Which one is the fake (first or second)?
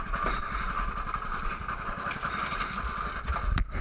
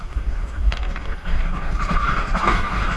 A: second